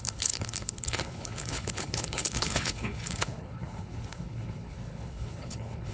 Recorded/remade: remade